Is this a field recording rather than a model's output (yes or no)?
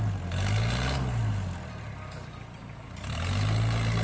yes